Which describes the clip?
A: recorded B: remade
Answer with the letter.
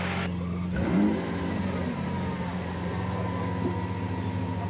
A